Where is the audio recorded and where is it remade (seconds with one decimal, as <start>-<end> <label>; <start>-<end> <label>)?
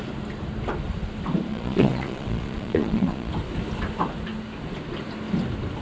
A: 0.0-1.5 recorded; 1.5-3.3 remade; 3.3-5.8 recorded